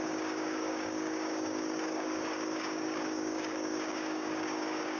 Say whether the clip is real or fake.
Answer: fake